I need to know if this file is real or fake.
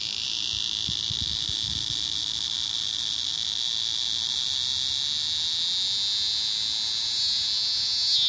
real